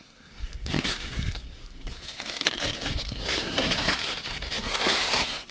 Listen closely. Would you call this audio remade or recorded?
remade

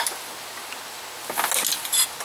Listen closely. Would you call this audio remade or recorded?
recorded